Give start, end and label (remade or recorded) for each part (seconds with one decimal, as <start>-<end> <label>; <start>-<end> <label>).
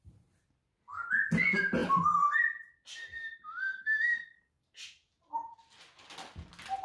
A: 0.0-3.7 recorded; 3.7-4.6 remade; 4.6-6.8 recorded